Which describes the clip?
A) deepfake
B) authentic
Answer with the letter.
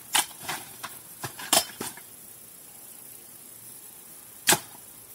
A